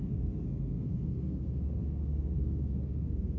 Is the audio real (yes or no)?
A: no